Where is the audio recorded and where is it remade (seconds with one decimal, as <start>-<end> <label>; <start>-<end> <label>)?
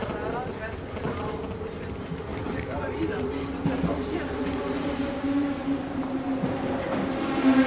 0.0-2.3 recorded; 2.3-6.6 remade; 6.6-7.7 recorded